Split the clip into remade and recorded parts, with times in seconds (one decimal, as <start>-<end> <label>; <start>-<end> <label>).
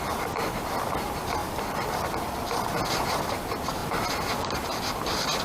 0.0-1.4 recorded; 1.4-3.2 remade; 3.2-5.4 recorded